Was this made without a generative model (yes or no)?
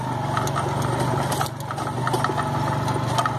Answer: yes